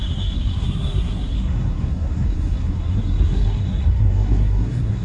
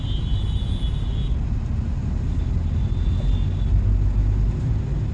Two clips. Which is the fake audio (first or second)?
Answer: first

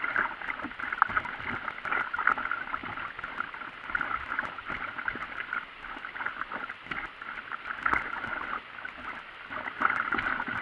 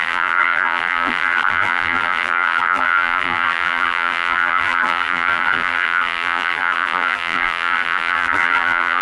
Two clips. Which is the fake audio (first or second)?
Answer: second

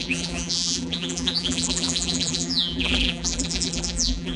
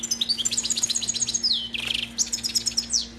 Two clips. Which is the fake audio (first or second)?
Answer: first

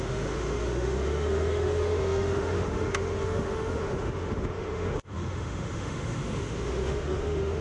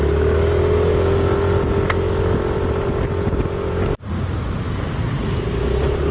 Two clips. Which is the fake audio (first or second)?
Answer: first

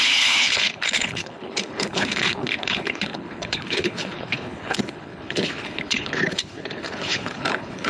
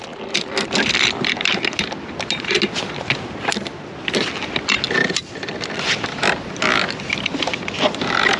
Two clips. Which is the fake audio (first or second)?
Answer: first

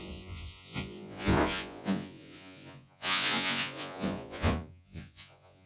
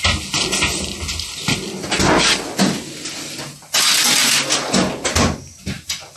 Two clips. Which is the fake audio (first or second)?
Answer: first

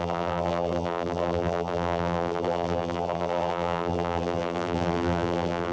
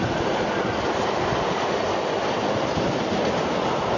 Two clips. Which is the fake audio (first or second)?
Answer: first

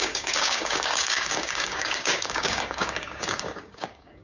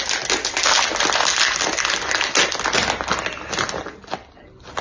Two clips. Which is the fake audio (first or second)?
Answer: first